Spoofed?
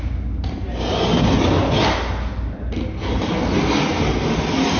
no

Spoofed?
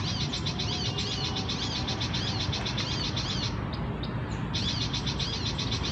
no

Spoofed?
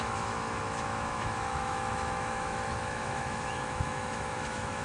yes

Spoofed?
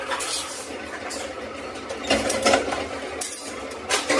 no